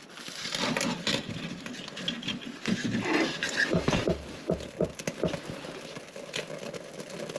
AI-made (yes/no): no